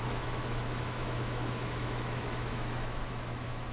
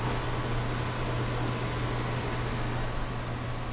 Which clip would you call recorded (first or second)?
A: second